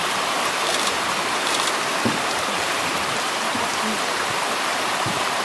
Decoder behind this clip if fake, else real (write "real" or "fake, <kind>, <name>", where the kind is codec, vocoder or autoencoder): fake, vocoder, BigVGAN v2